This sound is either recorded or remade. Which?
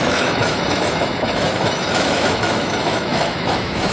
remade